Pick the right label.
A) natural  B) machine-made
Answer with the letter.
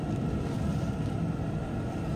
A